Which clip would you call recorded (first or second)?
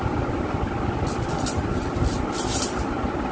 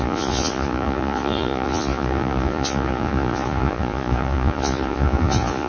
first